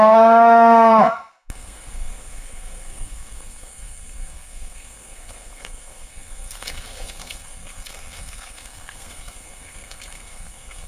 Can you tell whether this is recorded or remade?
remade